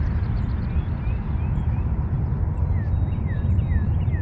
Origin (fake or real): real